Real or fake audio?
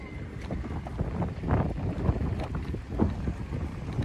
real